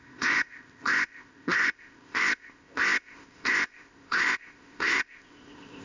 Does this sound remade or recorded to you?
remade